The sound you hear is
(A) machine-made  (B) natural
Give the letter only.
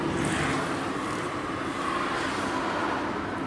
B